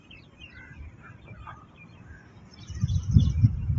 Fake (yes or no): yes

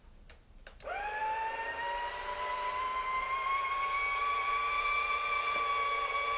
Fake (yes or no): no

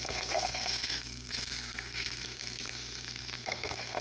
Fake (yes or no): yes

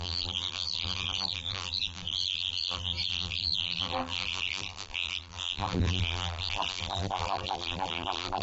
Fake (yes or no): yes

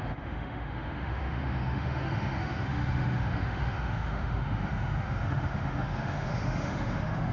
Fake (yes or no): yes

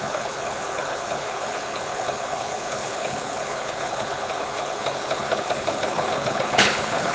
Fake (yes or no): yes